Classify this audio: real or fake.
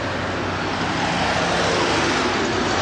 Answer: real